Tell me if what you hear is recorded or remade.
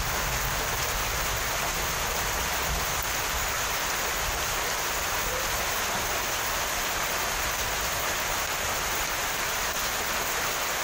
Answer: recorded